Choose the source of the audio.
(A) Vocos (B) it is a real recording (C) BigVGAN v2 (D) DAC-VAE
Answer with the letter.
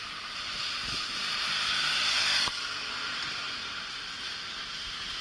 C